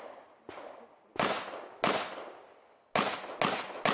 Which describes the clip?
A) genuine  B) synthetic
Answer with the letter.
A